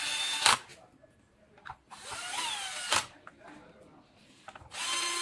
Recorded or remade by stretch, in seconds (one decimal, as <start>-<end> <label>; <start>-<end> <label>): 0.0-5.2 remade